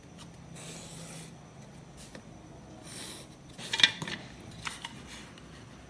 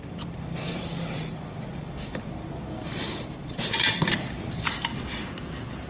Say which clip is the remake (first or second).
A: second